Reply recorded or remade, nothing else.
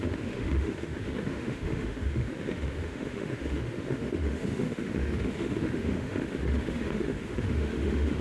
remade